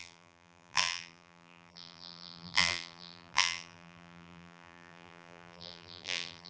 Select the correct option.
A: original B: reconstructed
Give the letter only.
B